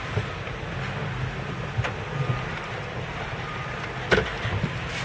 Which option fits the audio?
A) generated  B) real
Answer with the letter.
B